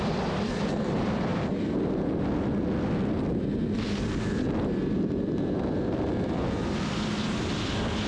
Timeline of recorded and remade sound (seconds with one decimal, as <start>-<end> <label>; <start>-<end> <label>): 0.0-1.3 remade; 1.3-6.2 recorded; 6.2-8.1 remade